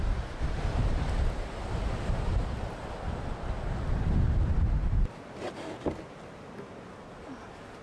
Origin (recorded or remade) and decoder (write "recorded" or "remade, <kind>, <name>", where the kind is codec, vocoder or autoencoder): recorded